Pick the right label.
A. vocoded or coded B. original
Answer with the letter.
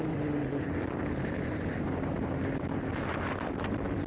A